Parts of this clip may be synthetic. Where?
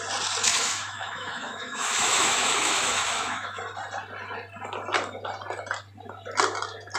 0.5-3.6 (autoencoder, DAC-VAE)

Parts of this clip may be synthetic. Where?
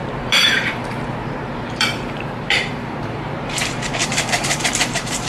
0.0-5.3 (vocoder, BigVGAN v2)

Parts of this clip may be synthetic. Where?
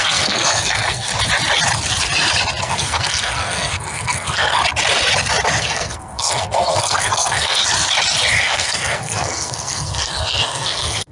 0.0-1.1 (codec, SNAC); 2.6-4.6; 5.6-7.6; 8.4-11.1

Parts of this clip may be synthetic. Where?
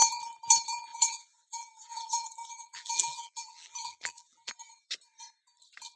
0.9-4.5 (vocoder, BigVGAN v2)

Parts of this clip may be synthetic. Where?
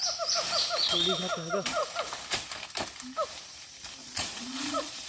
4.0-5.1 (vocoder, Vocos)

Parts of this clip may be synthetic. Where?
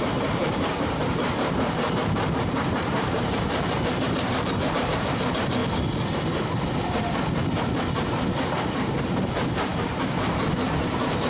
0.0-5.6 (vocoder, BigVGAN v2); 8.6-11.3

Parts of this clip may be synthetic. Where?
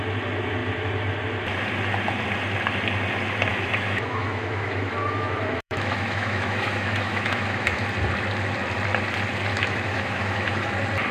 3.5-7.8 (autoencoder, DAC-VAE); 9.5-10.7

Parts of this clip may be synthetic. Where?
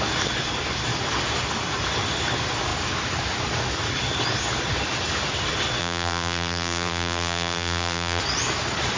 5.8-8.2 (vocoder, BigVGAN v2)